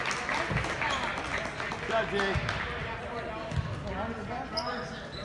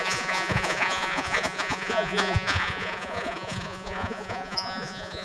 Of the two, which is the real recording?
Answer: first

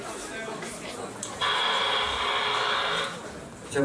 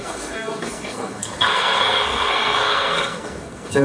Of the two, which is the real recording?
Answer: first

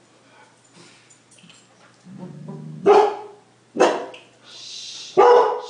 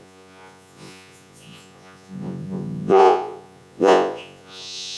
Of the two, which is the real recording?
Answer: first